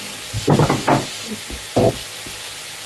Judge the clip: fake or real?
real